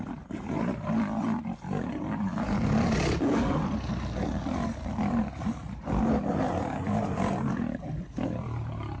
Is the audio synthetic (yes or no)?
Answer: no